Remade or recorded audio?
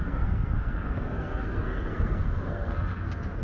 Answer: remade